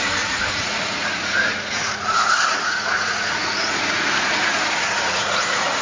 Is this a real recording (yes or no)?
no